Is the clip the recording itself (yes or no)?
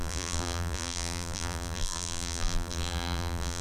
no